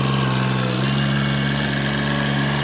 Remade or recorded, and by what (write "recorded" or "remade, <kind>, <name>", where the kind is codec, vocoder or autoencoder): recorded